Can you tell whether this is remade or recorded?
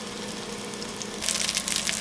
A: recorded